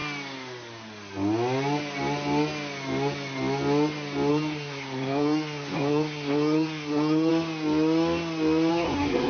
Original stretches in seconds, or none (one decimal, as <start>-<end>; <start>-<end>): 0.0-4.3; 7.3-8.7